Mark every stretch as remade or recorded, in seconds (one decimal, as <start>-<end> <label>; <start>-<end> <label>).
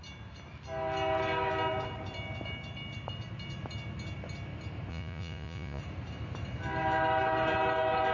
0.0-4.9 recorded; 4.9-5.8 remade; 5.8-8.1 recorded